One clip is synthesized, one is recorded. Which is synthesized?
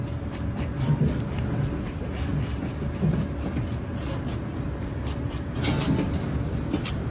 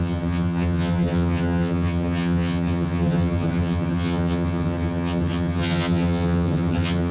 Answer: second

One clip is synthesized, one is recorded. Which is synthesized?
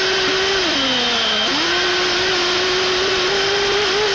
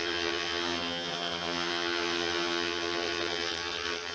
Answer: second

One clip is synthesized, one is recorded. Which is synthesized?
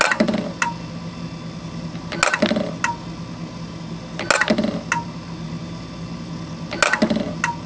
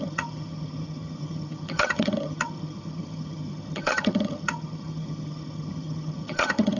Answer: second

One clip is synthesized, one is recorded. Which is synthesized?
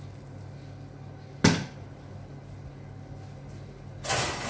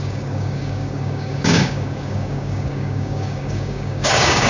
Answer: second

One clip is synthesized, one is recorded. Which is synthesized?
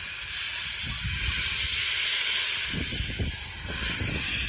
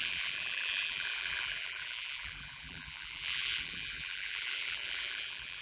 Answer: second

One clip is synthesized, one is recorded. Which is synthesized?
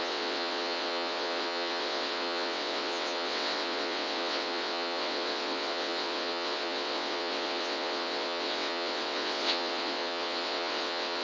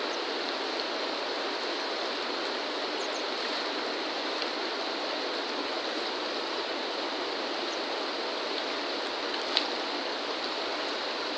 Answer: first